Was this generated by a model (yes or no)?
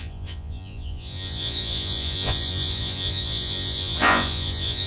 yes